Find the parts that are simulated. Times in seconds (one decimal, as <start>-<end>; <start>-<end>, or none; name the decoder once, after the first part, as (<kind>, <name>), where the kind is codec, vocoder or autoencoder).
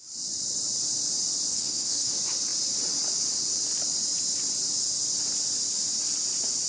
1.5-2.1 (codec, SNAC)